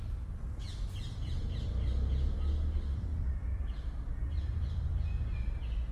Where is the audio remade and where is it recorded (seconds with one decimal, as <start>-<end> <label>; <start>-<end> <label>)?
0.0-5.9 recorded